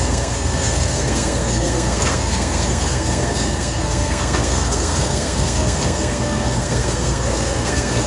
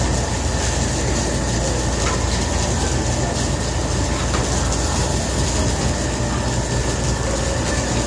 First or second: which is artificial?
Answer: first